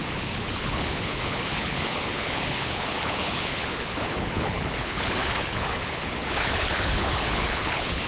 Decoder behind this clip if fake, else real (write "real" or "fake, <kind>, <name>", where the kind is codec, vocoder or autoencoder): fake, codec, HILCodec